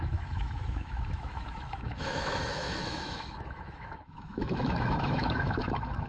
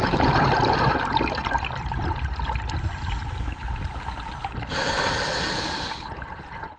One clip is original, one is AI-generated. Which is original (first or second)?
second